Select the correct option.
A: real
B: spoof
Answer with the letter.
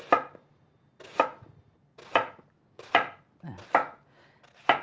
A